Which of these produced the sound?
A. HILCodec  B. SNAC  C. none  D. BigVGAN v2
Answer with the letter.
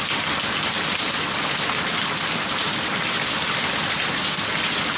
C